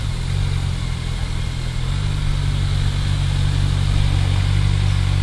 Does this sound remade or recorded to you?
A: recorded